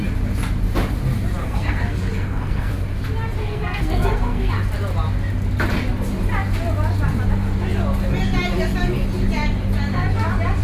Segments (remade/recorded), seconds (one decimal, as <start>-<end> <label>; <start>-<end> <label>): 0.0-1.4 recorded; 1.4-2.7 remade; 2.7-3.4 recorded; 3.4-4.5 remade; 4.5-10.6 recorded